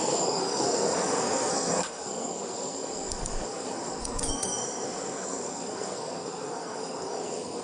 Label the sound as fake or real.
fake